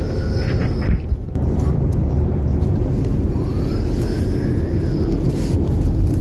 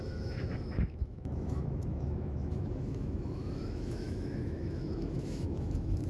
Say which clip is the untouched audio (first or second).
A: first